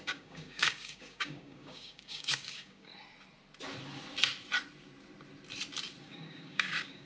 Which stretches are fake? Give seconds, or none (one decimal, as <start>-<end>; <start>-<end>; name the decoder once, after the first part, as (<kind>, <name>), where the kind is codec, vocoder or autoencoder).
0.0-2.9 (codec, DAC); 6.0-7.1